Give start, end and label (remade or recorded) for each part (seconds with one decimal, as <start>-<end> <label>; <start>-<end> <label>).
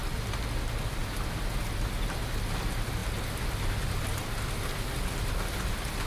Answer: 0.0-6.1 recorded